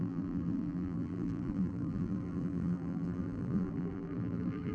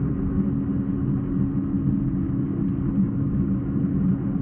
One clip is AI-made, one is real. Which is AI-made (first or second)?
first